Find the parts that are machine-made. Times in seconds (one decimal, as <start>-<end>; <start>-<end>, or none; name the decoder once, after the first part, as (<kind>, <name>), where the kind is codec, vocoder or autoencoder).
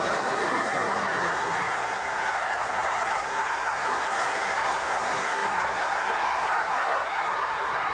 0.0-7.9 (codec, SNAC)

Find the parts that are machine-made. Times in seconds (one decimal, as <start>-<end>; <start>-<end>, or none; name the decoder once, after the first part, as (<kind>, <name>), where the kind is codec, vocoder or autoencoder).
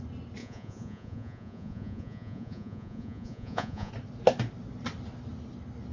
0.4-3.9 (vocoder, Vocos)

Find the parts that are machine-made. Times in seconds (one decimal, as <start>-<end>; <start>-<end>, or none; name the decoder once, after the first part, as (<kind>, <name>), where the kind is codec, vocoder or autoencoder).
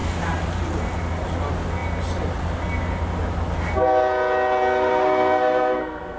4.9-6.2 (codec, SNAC)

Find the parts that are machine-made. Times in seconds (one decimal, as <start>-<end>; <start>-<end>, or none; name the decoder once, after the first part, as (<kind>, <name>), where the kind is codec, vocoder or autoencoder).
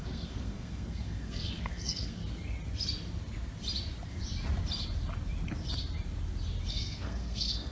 0.0-2.2 (codec, SNAC); 6.7-7.7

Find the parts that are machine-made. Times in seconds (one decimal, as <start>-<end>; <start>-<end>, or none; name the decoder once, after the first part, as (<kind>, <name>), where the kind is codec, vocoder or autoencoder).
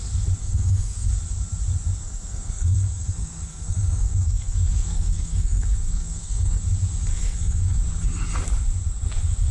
0.4-1.1 (codec, SNAC); 2.0-6.6; 7.1-7.8